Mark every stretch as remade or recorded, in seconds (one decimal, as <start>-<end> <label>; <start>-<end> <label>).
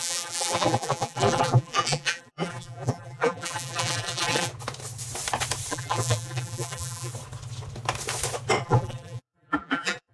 0.0-4.5 remade; 4.5-5.7 recorded; 5.7-7.1 remade; 7.1-8.6 recorded; 8.6-10.1 remade